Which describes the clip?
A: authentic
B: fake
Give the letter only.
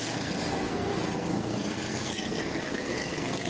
B